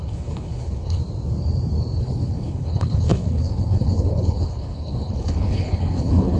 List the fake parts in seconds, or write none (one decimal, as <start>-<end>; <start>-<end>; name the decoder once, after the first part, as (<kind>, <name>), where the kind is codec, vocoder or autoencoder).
0.0-1.0 (codec, HILCodec); 2.0-6.4